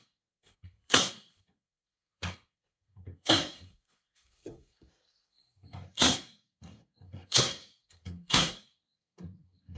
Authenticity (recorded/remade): remade